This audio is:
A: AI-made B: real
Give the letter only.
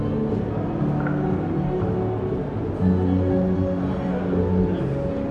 B